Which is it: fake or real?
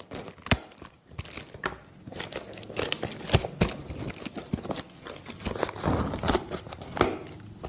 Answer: real